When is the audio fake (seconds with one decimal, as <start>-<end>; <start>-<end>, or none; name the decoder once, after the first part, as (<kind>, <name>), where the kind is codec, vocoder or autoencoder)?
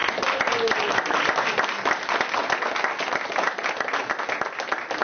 none